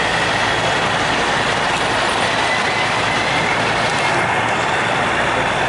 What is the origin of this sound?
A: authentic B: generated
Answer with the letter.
A